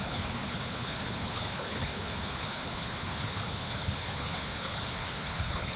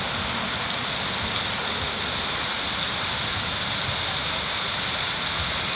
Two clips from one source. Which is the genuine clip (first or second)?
second